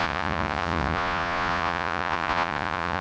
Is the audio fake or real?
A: fake